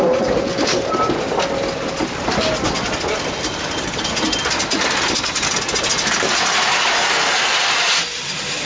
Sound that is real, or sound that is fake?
real